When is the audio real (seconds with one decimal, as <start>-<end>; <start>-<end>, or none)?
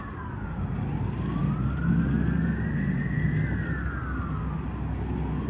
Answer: 0.0-5.5